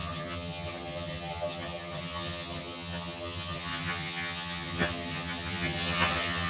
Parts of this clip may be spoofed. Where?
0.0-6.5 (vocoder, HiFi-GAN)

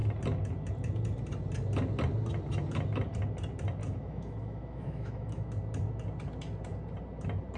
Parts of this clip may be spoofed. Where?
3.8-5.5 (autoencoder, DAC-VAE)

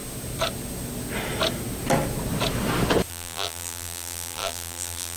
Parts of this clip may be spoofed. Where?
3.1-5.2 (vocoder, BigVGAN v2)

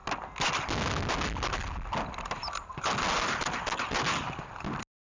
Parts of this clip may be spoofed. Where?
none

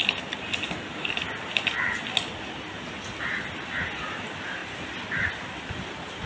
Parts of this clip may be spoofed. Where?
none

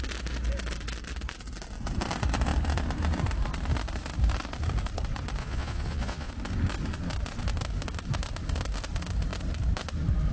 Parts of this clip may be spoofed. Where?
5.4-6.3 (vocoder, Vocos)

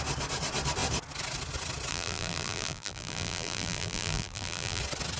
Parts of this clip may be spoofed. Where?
1.9-4.8 (vocoder, BigVGAN v2)

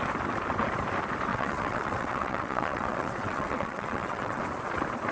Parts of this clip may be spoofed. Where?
1.3-4.4 (vocoder, WaveNeXt)